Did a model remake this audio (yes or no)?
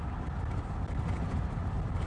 no